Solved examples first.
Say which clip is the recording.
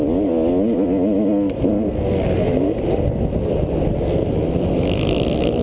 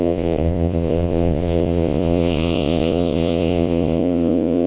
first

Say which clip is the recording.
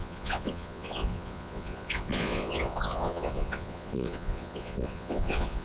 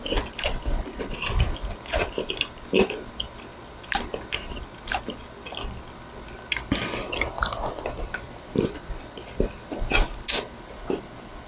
second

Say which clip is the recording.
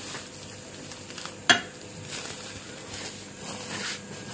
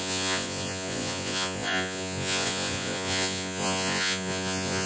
first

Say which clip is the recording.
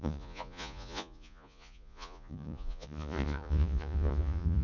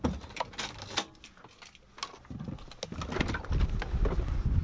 second